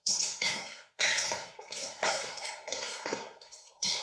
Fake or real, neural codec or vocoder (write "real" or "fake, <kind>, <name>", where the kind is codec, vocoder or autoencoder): fake, codec, SNAC